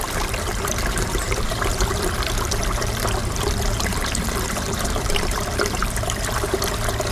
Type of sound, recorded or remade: remade